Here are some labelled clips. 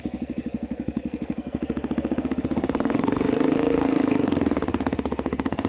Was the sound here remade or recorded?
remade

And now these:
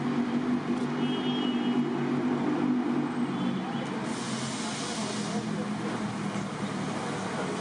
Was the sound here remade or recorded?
recorded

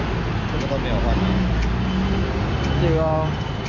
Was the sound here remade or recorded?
recorded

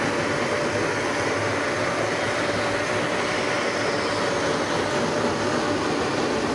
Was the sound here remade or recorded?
recorded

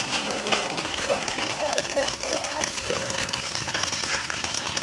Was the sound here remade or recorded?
remade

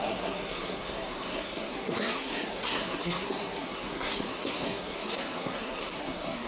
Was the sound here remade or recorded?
remade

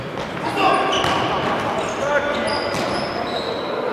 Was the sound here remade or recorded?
recorded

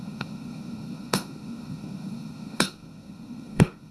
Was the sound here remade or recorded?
remade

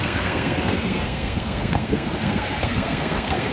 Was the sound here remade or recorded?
remade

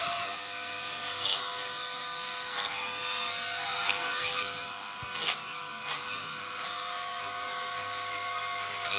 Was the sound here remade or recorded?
remade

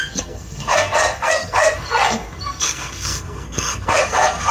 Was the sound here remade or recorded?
remade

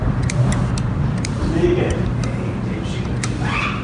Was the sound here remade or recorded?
recorded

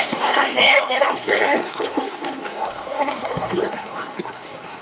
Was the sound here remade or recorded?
remade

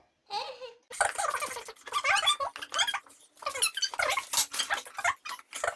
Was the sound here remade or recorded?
recorded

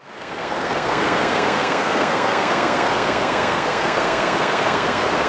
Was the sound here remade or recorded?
remade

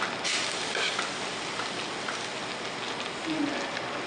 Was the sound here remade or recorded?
recorded